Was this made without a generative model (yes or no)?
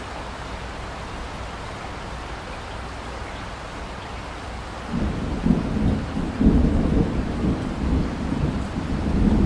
yes